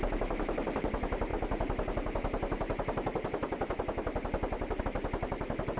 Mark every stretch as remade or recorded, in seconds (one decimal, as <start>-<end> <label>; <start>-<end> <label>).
0.0-5.8 recorded